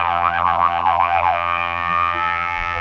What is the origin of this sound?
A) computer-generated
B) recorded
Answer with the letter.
A